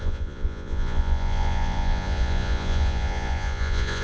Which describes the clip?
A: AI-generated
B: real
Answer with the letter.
A